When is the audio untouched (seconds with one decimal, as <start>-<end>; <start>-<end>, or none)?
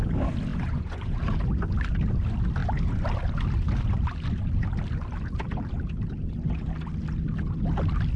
0.0-0.5; 1.2-8.2